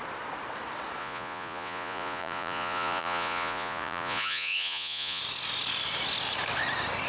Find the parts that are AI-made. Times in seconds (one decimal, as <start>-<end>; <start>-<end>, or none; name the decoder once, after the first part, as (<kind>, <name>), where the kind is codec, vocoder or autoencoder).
1.0-5.2 (vocoder, Vocos)